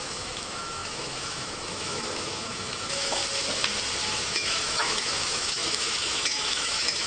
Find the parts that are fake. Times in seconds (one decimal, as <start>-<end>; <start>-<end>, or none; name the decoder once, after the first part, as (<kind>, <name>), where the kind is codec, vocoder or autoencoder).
0.0-3.2 (autoencoder, DAC-VAE); 4.1-7.1